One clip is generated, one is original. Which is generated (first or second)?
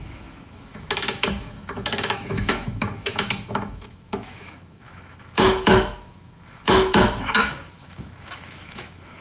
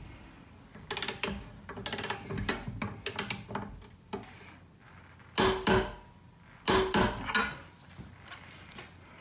first